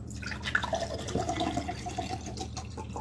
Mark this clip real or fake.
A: real